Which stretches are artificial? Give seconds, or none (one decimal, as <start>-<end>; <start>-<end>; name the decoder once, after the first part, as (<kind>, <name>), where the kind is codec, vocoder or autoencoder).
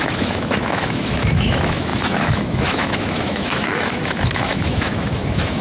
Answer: 0.0-5.6 (autoencoder, DAC-VAE)